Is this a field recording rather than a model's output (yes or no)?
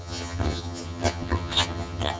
no